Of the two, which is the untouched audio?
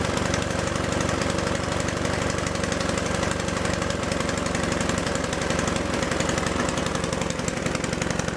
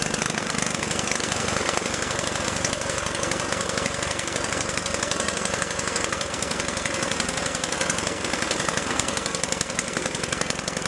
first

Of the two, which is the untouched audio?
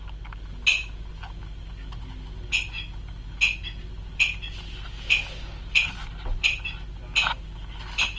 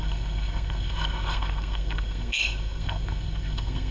first